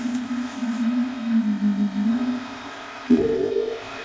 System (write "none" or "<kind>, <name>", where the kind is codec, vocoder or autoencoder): codec, ZipCodec